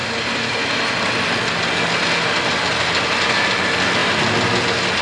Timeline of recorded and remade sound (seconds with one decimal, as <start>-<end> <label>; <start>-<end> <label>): 0.0-5.0 recorded